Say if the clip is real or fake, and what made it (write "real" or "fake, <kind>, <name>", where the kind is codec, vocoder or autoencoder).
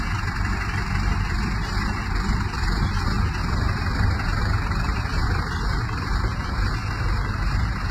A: fake, vocoder, BigVGAN v2